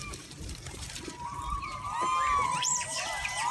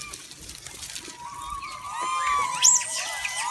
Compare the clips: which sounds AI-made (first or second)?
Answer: first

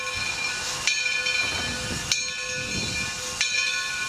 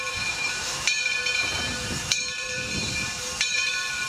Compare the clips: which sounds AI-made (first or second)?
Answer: second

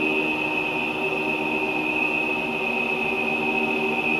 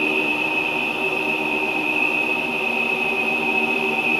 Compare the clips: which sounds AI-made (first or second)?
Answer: second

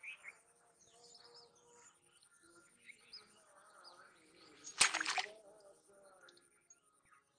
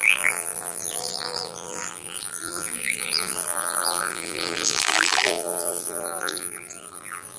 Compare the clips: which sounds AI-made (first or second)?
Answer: second